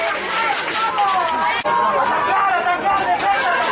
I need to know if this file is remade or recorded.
recorded